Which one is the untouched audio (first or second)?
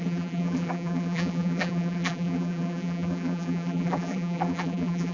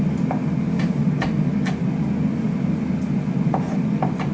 second